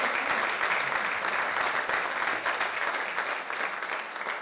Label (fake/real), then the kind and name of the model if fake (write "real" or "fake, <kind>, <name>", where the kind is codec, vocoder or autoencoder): real